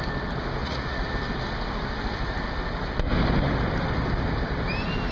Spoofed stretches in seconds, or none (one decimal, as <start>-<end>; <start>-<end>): 0.6-1.1

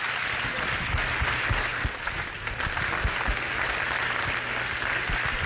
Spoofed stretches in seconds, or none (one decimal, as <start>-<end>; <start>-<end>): none

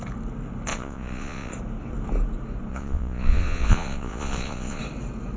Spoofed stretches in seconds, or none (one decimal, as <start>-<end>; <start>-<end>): 0.7-1.5; 2.7-4.8

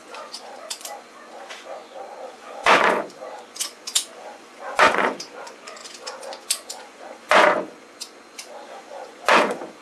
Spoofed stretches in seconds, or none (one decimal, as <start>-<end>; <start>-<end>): 0.0-9.8

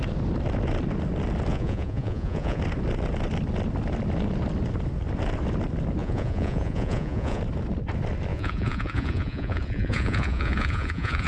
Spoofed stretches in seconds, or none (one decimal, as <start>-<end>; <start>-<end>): 1.5-2.6; 6.0-7.4; 8.3-11.3